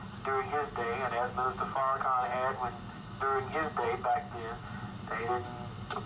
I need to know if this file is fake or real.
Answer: real